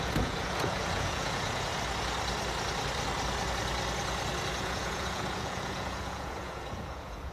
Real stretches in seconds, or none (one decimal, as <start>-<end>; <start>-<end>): 1.7-4.6